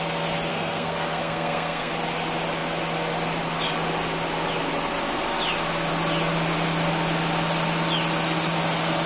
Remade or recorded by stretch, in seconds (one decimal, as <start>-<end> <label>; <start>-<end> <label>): 0.0-0.5 recorded; 0.5-1.9 remade; 1.9-9.1 recorded